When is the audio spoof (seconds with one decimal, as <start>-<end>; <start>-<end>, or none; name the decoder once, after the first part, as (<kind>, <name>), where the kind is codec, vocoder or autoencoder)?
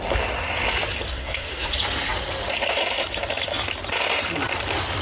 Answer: 1.1-1.7 (codec, SNAC)